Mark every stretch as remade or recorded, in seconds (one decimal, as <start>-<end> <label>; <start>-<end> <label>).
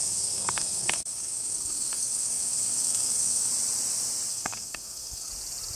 0.0-3.5 remade; 3.5-4.3 recorded; 4.3-5.3 remade; 5.3-5.8 recorded